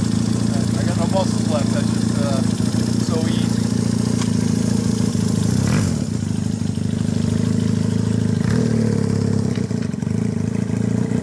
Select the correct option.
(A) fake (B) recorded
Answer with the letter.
B